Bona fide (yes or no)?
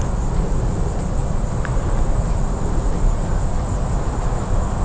yes